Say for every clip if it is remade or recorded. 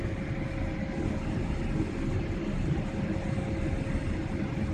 recorded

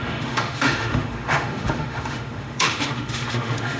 remade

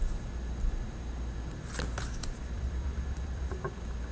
recorded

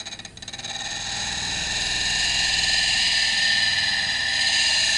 recorded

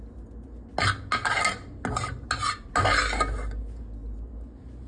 recorded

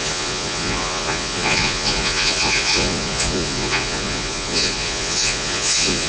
remade